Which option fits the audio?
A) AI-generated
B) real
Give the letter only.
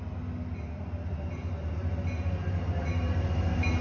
B